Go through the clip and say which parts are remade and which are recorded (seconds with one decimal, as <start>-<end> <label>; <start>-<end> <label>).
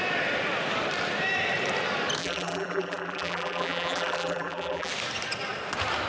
0.0-2.2 recorded; 2.2-4.9 remade; 4.9-6.1 recorded